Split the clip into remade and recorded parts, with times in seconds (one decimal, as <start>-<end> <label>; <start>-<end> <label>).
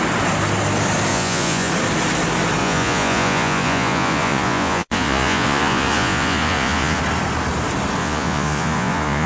0.0-1.1 recorded; 1.1-1.7 remade; 1.7-2.6 recorded; 2.6-7.0 remade; 7.0-8.0 recorded; 8.0-9.3 remade